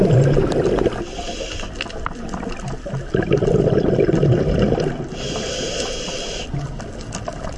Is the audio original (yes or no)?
yes